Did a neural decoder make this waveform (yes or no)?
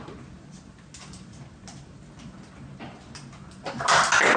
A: no